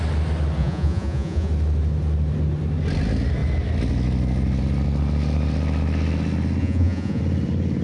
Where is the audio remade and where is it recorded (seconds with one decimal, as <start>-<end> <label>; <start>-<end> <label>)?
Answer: 0.0-0.6 recorded; 0.6-1.5 remade; 1.5-6.6 recorded; 6.6-7.2 remade; 7.2-7.8 recorded